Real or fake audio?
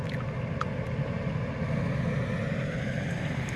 real